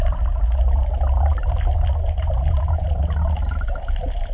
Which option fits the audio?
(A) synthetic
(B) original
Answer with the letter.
B